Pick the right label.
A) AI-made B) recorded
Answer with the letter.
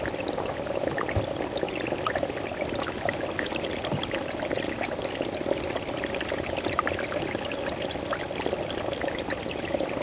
B